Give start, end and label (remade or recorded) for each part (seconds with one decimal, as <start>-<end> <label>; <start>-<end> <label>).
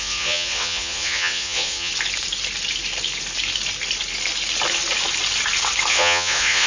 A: 0.0-1.9 remade; 1.9-5.9 recorded; 5.9-6.7 remade